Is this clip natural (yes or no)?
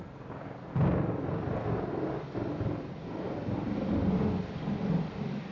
yes